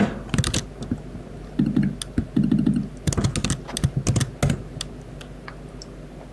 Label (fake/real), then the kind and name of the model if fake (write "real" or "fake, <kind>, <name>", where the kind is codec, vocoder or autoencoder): real